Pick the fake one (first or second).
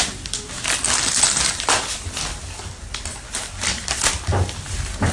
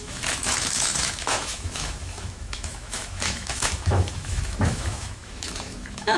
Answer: second